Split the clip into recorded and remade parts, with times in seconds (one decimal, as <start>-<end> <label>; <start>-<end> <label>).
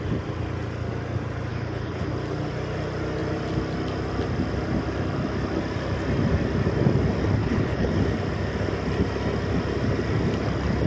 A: 0.0-1.5 recorded; 1.5-2.1 remade; 2.1-7.4 recorded; 7.4-7.9 remade; 7.9-10.9 recorded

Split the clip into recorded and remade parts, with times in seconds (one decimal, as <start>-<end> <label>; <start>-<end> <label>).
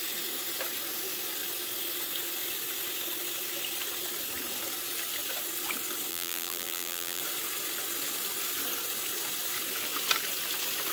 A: 0.0-6.1 recorded; 6.1-7.2 remade; 7.2-10.9 recorded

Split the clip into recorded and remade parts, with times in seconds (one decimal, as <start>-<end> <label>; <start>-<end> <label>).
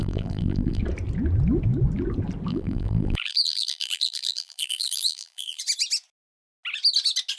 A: 0.0-0.8 remade; 0.8-2.5 recorded; 2.5-5.6 remade; 5.6-7.4 recorded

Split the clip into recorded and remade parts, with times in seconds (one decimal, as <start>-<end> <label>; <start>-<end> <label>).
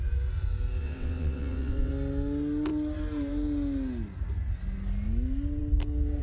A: 0.0-0.8 recorded; 0.8-1.9 remade; 1.9-6.2 recorded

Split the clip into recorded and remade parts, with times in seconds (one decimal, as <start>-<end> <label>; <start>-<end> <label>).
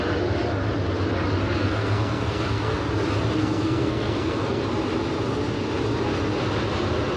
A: 0.0-1.6 recorded; 1.6-2.9 remade; 2.9-3.4 recorded; 3.4-4.6 remade; 4.6-7.2 recorded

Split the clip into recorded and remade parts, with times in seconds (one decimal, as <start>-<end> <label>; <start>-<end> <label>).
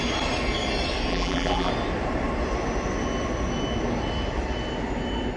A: 0.0-1.1 recorded; 1.1-1.7 remade; 1.7-5.4 recorded